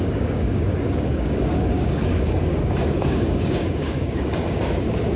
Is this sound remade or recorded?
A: remade